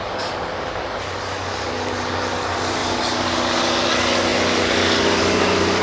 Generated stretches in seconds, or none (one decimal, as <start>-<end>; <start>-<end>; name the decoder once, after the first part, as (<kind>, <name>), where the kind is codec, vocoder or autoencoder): 0.0-5.8 (codec, DAC)